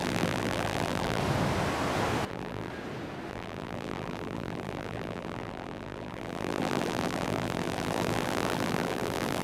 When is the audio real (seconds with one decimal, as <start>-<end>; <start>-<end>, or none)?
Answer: 1.2-2.3; 2.7-3.3